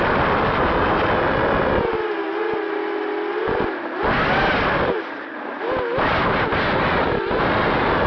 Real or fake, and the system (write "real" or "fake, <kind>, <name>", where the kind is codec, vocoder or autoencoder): real